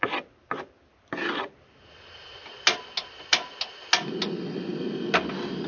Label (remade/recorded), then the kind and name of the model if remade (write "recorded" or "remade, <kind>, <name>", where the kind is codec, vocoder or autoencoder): recorded